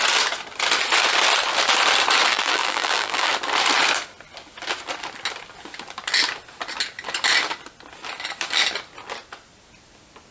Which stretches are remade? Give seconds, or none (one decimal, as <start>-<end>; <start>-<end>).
2.3-3.3